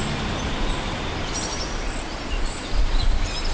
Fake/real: real